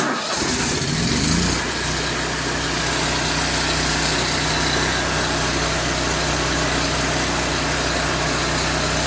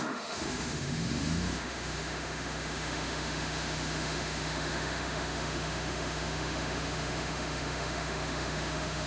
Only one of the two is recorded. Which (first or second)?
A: first